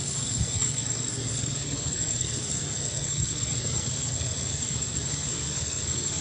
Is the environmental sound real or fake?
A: fake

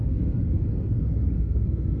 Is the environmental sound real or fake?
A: fake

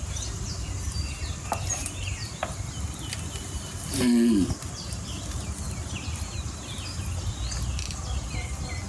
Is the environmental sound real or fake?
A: real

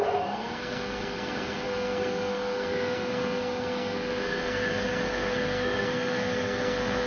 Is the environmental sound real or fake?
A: fake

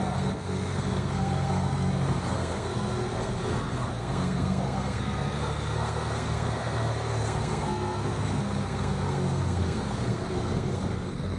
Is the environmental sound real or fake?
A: fake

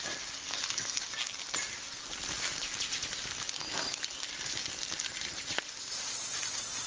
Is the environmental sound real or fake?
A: real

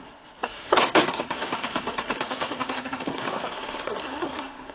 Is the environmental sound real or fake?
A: fake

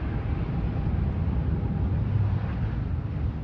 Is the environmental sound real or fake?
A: real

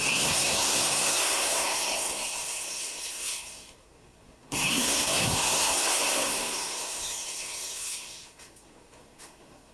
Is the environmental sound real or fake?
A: fake